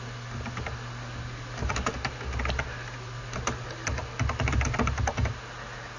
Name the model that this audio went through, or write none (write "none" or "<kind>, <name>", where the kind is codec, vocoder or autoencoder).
none